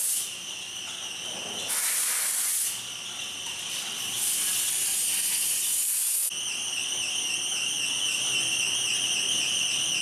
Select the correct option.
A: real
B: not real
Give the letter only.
A